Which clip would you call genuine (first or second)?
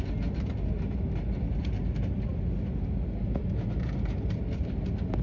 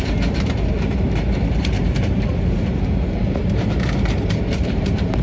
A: first